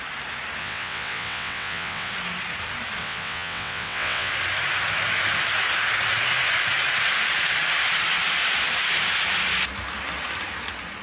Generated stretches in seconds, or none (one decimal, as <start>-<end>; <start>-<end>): 0.6-2.1; 3.0-4.3